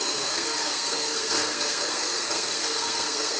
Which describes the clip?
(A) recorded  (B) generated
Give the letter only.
B